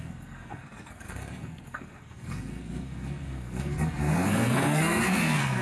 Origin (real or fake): fake